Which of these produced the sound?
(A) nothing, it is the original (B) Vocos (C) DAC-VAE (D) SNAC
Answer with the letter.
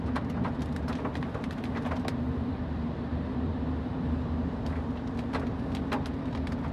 A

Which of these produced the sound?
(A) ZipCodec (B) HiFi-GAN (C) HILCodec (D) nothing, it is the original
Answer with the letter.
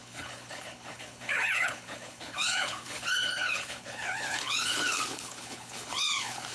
C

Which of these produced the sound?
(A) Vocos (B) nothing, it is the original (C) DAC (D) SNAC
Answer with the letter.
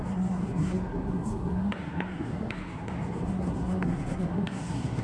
D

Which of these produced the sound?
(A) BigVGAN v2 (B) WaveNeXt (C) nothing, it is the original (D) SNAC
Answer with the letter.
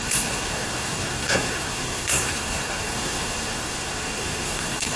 D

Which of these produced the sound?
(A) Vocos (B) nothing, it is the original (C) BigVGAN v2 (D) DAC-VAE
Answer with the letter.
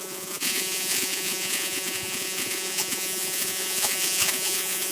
A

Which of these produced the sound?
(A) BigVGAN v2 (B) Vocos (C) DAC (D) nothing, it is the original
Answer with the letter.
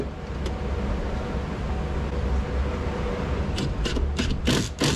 D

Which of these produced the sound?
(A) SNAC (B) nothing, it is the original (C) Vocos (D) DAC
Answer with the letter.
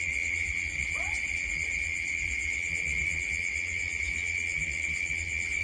C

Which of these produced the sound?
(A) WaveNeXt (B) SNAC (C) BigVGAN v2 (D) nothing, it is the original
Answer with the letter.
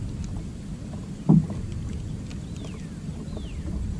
D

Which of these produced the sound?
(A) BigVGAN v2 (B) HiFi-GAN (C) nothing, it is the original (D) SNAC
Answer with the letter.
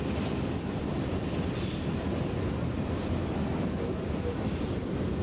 A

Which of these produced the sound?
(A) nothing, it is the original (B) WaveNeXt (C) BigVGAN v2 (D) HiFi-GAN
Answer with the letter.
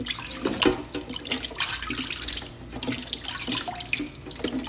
A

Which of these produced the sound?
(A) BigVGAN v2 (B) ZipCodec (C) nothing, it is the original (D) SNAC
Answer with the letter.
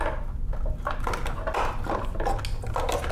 C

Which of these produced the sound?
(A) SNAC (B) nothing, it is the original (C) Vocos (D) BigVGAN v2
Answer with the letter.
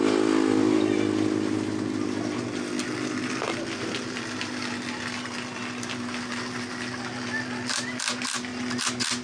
B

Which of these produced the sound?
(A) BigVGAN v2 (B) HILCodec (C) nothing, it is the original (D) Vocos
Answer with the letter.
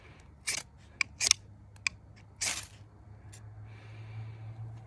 C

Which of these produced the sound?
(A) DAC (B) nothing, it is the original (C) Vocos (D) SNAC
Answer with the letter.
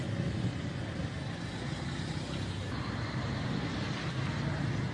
B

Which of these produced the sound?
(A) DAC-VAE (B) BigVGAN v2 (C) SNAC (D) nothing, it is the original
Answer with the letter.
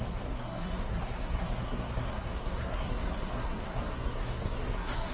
C